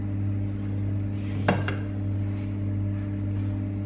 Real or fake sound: real